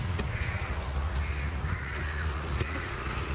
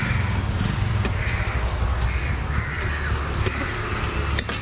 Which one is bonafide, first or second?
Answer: second